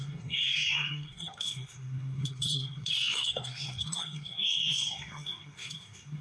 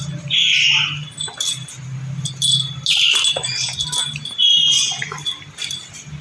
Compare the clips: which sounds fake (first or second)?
first